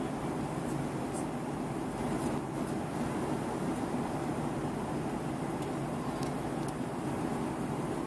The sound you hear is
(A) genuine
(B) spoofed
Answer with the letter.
A